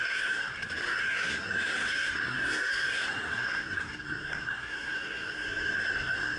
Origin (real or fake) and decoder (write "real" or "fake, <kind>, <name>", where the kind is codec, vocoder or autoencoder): fake, codec, SNAC